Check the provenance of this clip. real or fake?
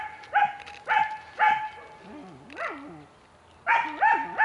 real